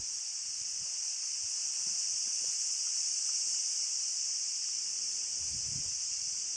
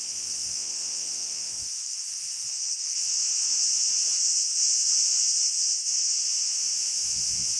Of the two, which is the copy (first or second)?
second